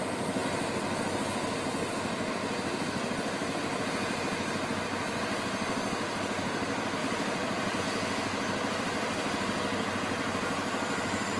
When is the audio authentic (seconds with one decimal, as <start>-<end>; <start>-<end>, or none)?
0.0-7.0; 7.8-11.4